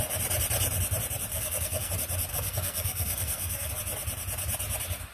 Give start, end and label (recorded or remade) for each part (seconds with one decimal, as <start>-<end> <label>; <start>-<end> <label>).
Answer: 0.0-1.3 recorded; 1.3-1.9 remade; 1.9-2.3 recorded; 2.3-3.7 remade; 3.7-5.1 recorded